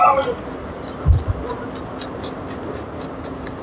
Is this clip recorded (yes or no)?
yes